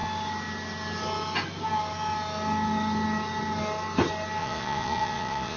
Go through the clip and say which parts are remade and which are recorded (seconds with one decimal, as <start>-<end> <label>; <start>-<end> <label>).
0.0-4.4 recorded; 4.4-5.6 remade